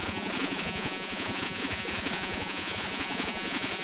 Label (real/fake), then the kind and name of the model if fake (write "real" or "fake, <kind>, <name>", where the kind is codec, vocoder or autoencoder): fake, vocoder, Vocos